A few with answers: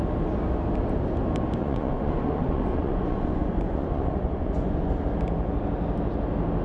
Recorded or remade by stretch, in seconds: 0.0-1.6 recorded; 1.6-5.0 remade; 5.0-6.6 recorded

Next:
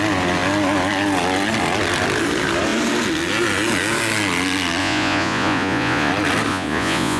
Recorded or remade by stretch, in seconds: 0.0-4.8 recorded; 4.8-6.1 remade; 6.1-6.5 recorded; 6.5-7.2 remade

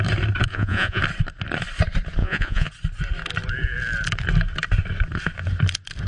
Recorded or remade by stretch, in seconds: 0.0-0.5 recorded; 0.5-1.0 remade; 1.0-2.2 recorded; 2.2-2.7 remade; 2.7-6.1 recorded

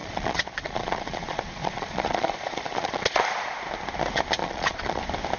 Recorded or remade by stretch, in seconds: 0.0-3.2 remade; 3.2-4.4 recorded; 4.4-5.0 remade; 5.0-5.4 recorded

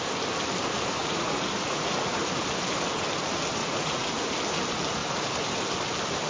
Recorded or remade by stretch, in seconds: 0.0-1.0 recorded; 1.0-2.2 remade; 2.2-3.6 recorded; 3.6-4.3 remade; 4.3-6.3 recorded

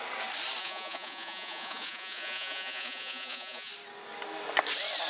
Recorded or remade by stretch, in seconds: 0.0-0.6 recorded; 0.6-3.7 remade; 3.7-5.1 recorded